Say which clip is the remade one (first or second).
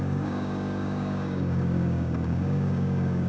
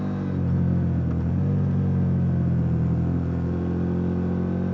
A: first